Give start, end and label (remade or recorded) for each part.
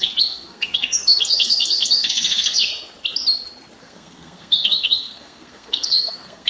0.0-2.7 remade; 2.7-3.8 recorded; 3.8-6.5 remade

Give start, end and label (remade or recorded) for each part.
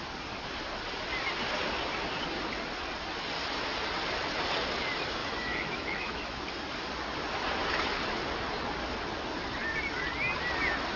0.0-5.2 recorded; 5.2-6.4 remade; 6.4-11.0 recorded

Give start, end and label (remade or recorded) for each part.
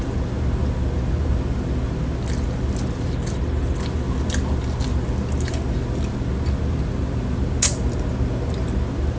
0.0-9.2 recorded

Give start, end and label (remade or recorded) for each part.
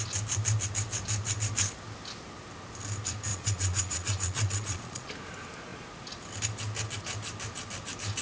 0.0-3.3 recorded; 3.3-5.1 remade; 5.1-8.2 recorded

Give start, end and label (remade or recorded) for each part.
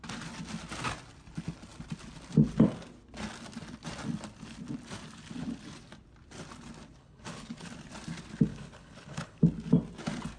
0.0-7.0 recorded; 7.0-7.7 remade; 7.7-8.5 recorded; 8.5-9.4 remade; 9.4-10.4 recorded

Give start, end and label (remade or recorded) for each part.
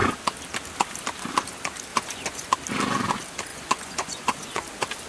0.0-1.9 recorded; 1.9-2.5 remade; 2.5-3.5 recorded; 3.5-4.6 remade; 4.6-5.1 recorded